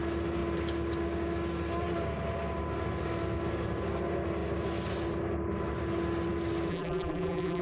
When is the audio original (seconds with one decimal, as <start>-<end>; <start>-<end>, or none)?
0.0-6.7